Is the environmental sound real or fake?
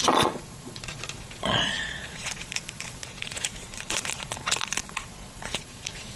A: fake